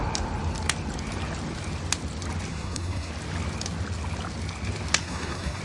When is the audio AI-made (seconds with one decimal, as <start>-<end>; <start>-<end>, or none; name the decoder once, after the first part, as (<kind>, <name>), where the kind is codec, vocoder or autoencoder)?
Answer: 2.5-3.1 (codec, SNAC); 5.0-5.6